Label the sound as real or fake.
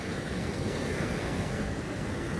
fake